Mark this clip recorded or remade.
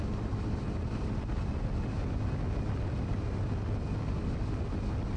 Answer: recorded